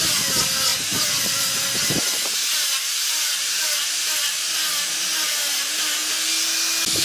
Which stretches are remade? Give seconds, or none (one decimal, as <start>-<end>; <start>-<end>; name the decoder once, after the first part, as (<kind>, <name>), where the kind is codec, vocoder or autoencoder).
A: 0.0-6.0 (vocoder, BigVGAN v2)